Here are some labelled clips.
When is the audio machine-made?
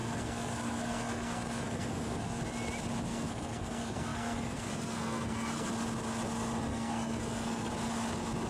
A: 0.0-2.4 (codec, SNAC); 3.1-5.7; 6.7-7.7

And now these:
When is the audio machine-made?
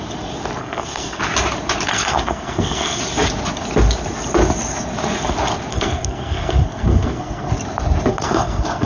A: 0.6-1.2 (codec, SNAC); 1.9-3.0; 5.7-7.5; 8.1-8.9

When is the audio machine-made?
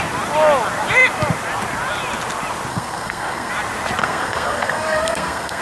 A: 2.7-3.5 (codec, SNAC); 4.0-5.6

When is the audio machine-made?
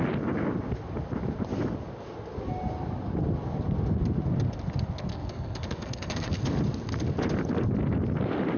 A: 5.1-6.4 (codec, SNAC)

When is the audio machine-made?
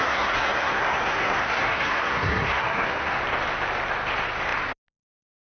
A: 0.0-3.2 (codec, SNAC)